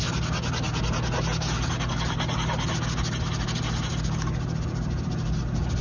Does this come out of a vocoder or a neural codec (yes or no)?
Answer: no